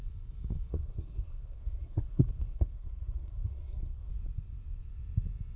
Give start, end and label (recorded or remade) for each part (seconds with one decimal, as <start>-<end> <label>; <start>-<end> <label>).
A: 0.0-0.7 recorded; 0.7-4.1 remade; 4.1-5.6 recorded